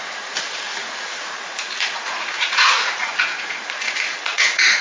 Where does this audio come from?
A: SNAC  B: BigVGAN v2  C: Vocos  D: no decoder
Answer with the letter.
C